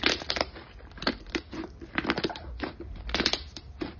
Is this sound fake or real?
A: real